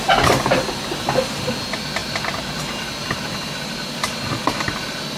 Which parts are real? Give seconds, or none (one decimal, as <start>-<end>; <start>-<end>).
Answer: 0.0-2.0; 2.9-5.2